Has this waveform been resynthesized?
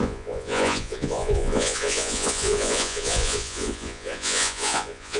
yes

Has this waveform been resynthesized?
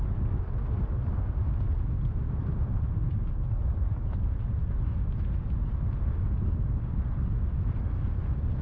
no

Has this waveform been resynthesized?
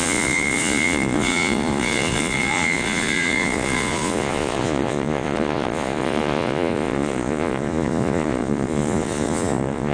yes